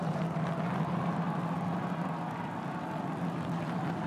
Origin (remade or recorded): recorded